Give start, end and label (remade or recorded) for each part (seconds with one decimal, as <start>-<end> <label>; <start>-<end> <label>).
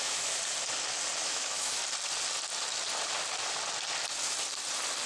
0.0-0.4 remade; 0.4-1.2 recorded; 1.2-1.8 remade; 1.8-5.1 recorded